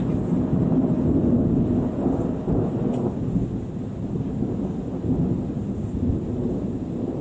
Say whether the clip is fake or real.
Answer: real